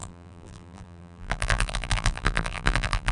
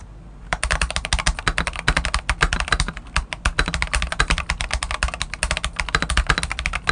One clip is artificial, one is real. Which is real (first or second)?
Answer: second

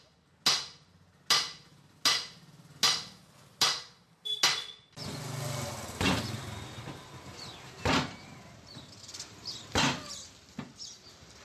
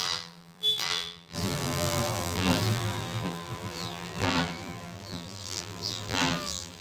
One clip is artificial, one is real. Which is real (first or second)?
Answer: first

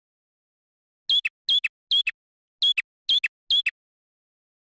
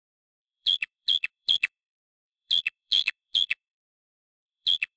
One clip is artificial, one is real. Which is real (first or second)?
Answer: first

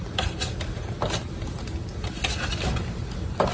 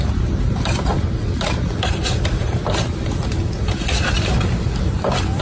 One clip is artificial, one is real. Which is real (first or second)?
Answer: first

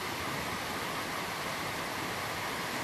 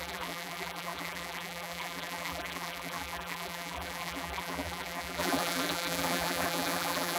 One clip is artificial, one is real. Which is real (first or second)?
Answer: first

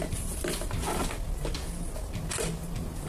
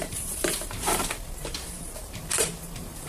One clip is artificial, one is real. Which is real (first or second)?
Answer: first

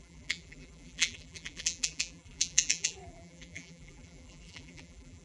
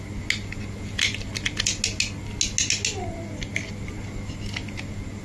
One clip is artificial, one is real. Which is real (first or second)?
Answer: second